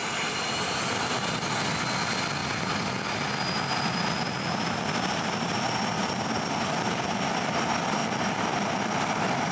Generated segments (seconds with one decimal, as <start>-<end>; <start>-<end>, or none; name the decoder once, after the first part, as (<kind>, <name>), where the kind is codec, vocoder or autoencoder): none